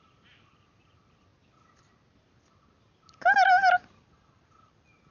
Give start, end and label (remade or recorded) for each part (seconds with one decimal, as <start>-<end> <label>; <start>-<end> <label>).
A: 0.0-5.1 recorded